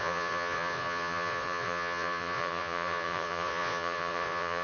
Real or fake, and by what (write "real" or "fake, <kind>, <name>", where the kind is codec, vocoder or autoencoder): fake, vocoder, Vocos